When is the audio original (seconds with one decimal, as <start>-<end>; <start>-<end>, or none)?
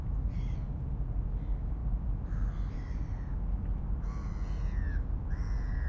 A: 0.0-5.9